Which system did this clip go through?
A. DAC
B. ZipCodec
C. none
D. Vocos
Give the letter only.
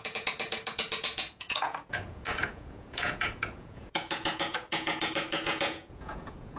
D